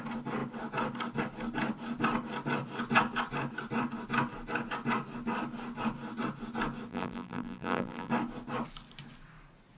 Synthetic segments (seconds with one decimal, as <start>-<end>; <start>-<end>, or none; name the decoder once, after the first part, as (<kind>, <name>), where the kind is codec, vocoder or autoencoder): 6.9-8.1 (vocoder, BigVGAN v2)